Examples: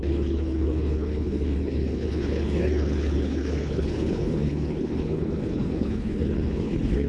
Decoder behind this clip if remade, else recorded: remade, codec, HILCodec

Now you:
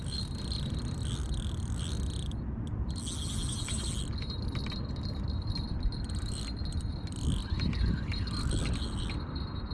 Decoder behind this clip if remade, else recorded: recorded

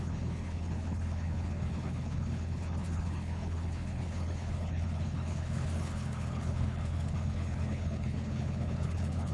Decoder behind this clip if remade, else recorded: remade, codec, HILCodec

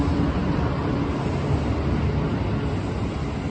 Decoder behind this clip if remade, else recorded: recorded